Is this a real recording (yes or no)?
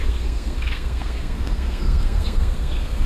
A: no